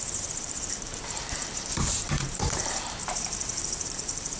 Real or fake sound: fake